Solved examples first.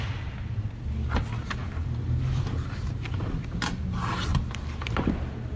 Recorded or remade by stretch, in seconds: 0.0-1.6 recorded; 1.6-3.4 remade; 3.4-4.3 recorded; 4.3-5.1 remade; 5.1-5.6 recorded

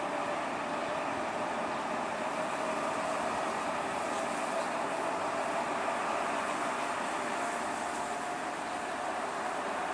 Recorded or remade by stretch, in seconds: 0.0-6.1 recorded; 6.1-6.8 remade; 6.8-9.9 recorded

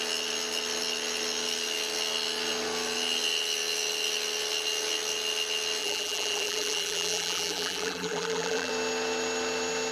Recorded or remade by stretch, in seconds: 0.0-5.8 recorded; 5.8-8.7 remade; 8.7-9.9 recorded

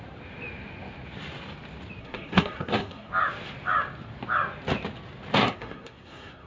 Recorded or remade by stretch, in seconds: 0.0-2.0 recorded; 2.0-3.1 remade; 3.1-5.4 recorded; 5.4-6.5 remade

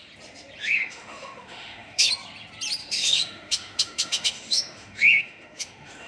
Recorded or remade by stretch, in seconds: 0.0-0.6 recorded; 0.6-2.1 remade; 2.1-2.8 recorded; 2.8-6.1 remade

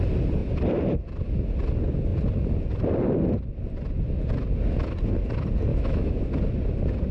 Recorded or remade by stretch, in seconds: 0.0-5.7 recorded; 5.7-6.2 remade; 6.2-7.1 recorded